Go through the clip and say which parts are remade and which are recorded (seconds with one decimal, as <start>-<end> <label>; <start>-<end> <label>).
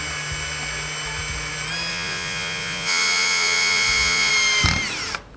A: 0.0-1.9 recorded; 1.9-4.3 remade; 4.3-5.4 recorded